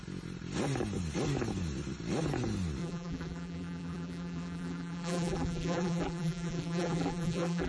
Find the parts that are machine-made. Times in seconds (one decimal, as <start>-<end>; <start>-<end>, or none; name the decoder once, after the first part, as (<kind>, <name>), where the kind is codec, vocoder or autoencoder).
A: 2.8-7.7 (vocoder, BigVGAN v2)